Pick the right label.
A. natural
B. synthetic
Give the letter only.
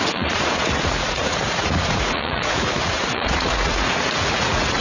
B